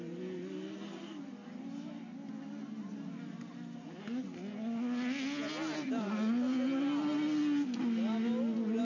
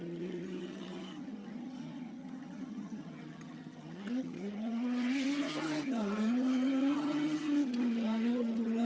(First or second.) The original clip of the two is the first